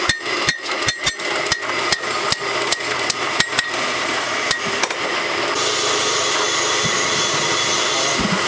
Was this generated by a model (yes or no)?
no